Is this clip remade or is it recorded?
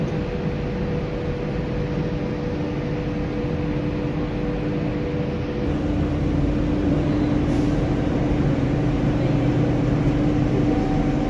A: recorded